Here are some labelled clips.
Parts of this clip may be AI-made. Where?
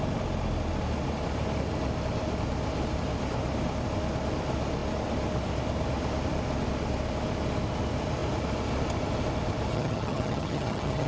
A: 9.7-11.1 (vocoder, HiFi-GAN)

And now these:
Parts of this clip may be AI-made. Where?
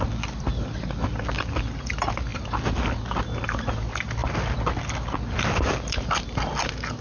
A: 4.2-4.8 (vocoder, BigVGAN v2)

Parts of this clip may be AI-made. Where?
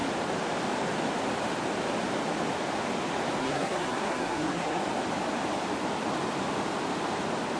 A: 3.4-4.8 (codec, SNAC)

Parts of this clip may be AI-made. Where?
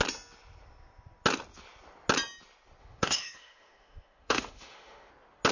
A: 2.8-5.1 (autoencoder, DAC-VAE)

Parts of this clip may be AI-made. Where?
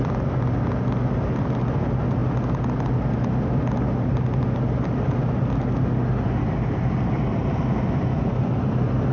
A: none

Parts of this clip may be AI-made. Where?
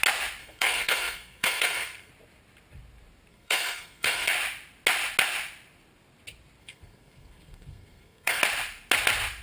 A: 0.4-2.1 (codec, SNAC); 3.3-4.3; 6.6-8.4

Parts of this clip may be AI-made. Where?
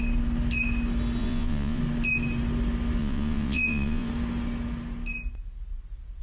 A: 1.2-1.8 (vocoder, Vocos); 3.0-4.1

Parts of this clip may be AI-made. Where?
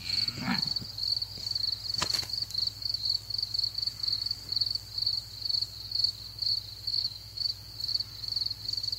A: 6.9-7.5 (autoencoder, DAC-VAE)